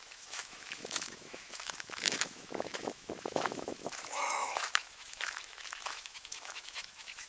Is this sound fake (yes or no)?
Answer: yes